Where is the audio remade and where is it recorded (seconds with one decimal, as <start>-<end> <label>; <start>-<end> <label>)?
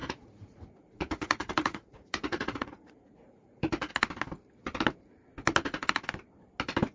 0.0-3.9 remade; 3.9-6.9 recorded